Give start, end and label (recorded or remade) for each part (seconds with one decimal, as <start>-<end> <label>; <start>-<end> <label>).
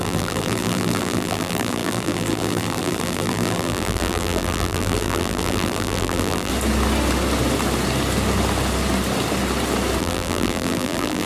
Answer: 0.0-6.5 remade; 6.5-10.0 recorded; 10.0-11.3 remade